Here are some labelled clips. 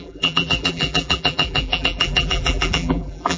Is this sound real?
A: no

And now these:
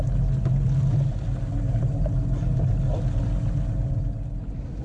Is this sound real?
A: yes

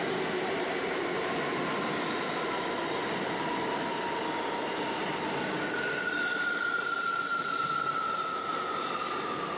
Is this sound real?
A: yes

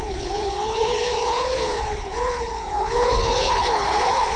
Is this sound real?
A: no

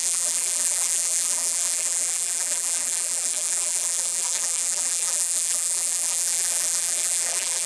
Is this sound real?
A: no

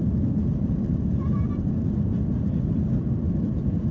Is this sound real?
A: yes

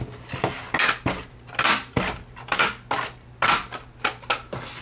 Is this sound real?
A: yes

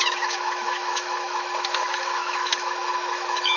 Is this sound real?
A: no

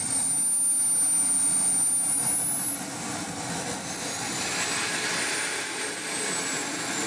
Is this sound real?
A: yes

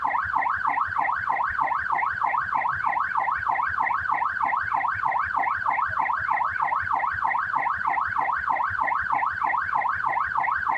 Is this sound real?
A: yes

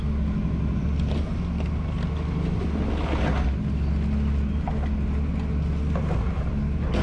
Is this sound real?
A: yes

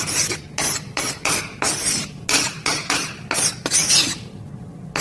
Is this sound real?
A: yes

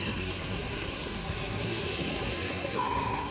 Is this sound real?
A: no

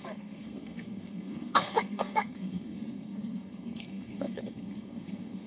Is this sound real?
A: no